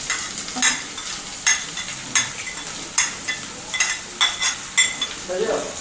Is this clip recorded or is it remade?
recorded